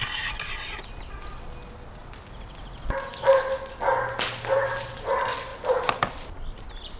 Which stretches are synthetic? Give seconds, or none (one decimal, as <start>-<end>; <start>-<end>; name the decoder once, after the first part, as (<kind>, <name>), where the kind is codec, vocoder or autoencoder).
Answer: none